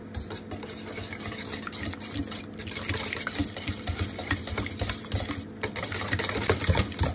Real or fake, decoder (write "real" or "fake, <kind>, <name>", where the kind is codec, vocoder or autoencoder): real